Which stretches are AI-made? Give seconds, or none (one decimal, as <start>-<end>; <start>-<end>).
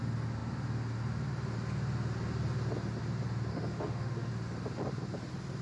3.5-4.3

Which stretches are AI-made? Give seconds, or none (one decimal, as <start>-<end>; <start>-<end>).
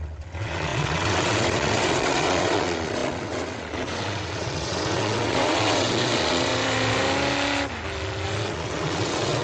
0.0-6.5; 8.4-9.4